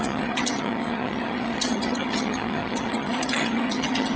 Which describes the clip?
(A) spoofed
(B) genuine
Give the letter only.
A